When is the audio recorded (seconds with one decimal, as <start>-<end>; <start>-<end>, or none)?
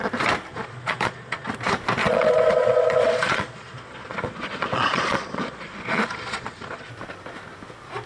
0.0-0.5; 1.5-2.0; 6.9-8.1